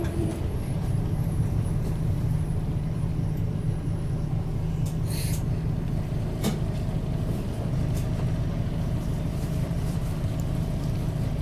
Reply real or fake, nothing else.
fake